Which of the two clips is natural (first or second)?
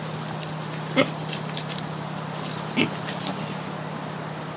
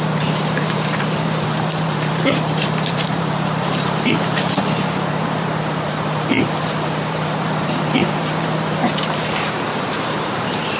first